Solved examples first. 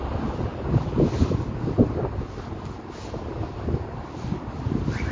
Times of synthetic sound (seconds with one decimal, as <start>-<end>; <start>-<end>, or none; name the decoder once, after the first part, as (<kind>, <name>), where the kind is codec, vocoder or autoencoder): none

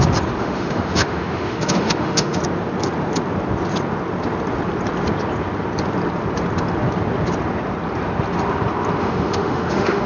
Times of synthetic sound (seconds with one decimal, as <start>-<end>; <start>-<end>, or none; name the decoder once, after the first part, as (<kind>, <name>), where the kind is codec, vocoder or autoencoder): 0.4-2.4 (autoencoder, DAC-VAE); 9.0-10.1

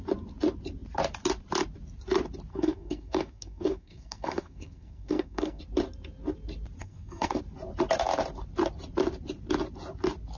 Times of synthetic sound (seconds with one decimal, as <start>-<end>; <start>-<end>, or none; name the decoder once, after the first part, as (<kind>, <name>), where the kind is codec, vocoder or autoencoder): 2.5-5.6 (codec, SNAC); 6.8-7.4